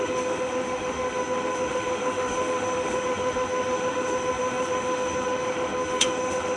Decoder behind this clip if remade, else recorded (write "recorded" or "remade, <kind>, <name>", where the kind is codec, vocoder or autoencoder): remade, autoencoder, DAC-VAE